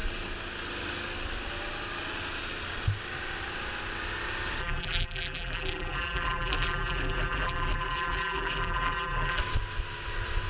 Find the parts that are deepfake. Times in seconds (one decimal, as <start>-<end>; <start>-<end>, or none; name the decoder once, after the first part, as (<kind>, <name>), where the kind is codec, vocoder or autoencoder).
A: 4.6-9.4 (vocoder, BigVGAN v2)

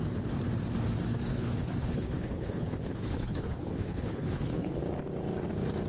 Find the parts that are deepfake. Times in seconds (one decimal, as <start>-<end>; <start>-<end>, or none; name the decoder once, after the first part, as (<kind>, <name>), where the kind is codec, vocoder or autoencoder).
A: 1.3-4.8 (codec, HILCodec)

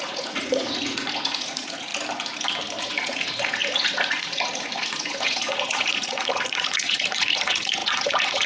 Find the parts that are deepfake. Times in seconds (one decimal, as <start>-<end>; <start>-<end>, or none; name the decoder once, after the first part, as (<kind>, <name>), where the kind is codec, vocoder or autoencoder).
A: 0.0-1.9 (vocoder, Vocos); 2.8-8.5

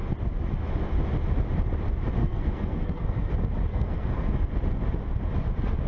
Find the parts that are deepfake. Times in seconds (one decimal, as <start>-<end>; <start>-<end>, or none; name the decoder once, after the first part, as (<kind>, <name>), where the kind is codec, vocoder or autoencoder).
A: 2.2-3.3 (codec, SNAC); 3.7-4.5

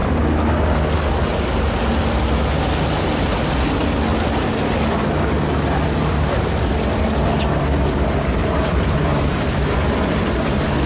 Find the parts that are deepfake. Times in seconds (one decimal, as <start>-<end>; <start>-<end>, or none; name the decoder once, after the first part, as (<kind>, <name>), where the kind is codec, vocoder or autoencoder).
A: 8.4-10.9 (vocoder, BigVGAN v2)

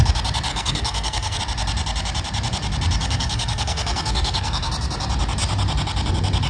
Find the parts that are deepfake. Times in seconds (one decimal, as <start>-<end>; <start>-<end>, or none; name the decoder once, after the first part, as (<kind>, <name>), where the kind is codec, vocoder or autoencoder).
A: 0.5-1.4 (codec, SNAC); 3.0-4.7

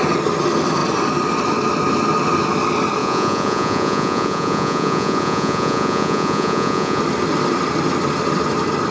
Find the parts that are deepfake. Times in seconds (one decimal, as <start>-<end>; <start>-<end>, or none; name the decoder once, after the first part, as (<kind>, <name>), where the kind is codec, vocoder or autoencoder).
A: 3.0-7.0 (vocoder, Vocos)